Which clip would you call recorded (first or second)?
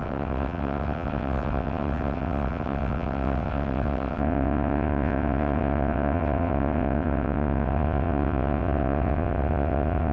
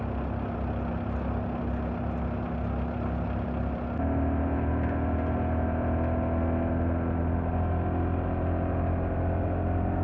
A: second